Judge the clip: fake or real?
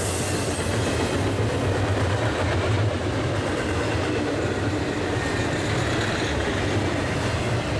real